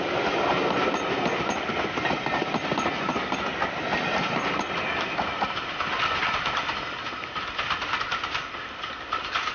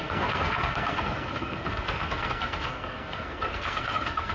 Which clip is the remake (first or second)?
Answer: second